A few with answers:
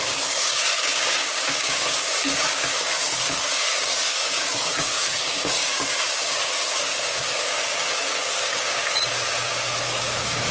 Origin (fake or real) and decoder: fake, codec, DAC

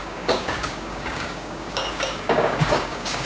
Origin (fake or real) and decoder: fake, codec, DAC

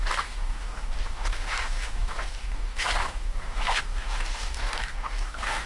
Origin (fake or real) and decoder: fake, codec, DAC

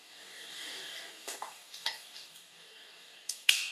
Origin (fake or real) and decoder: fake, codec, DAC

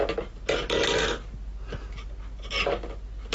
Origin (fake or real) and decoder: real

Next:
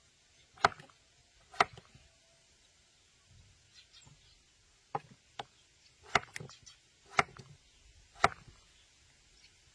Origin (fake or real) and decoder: real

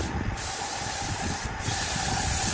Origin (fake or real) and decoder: real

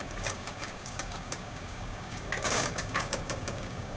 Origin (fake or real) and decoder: fake, codec, DAC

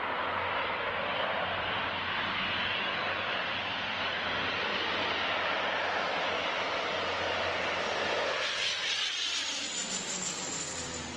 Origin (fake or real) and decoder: real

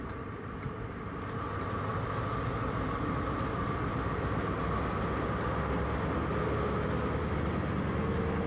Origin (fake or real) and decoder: real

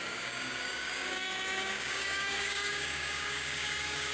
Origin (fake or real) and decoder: fake, codec, DAC